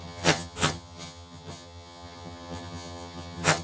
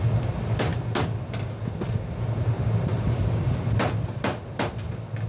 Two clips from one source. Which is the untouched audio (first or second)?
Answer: second